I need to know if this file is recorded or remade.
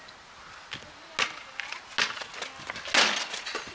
recorded